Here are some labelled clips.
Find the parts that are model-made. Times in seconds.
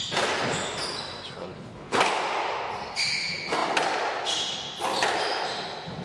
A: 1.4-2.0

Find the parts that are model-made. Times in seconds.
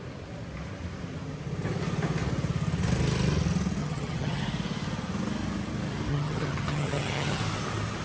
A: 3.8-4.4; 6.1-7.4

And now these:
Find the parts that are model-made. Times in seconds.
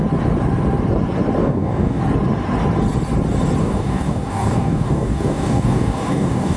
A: 1.4-2.0; 3.6-6.6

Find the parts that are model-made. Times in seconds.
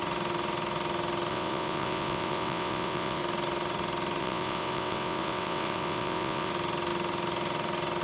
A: 1.3-3.2; 4.2-6.5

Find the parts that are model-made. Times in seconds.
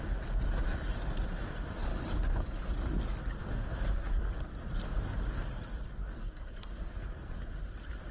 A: 3.4-4.3; 6.0-7.3